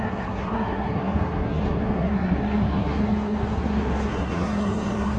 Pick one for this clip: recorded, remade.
remade